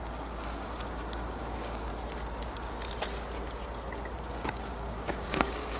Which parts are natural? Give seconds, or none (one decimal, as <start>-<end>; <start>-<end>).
1.9-4.2